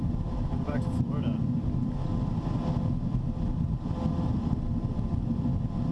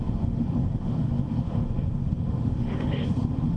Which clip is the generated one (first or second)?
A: second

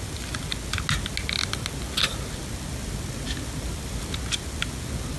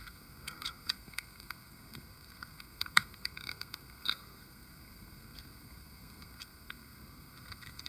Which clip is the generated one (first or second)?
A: second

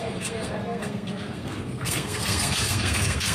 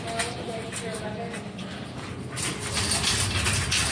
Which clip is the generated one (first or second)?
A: first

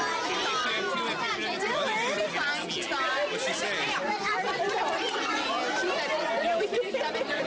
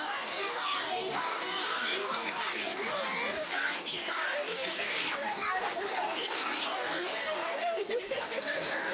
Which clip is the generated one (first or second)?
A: second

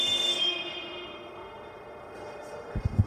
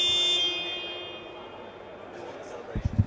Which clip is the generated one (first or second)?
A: first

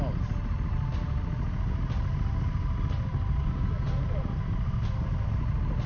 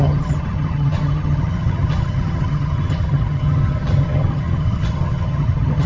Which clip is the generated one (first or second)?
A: second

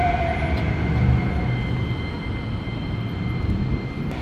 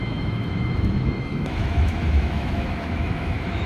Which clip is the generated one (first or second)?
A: second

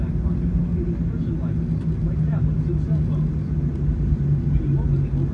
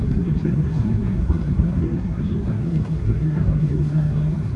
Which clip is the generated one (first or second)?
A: second